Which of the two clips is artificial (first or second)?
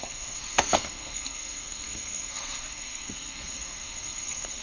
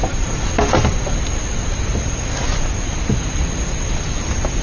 first